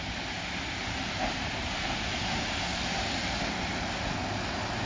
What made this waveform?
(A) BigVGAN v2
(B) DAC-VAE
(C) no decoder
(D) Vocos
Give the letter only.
C